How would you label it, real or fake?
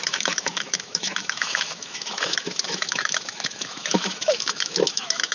fake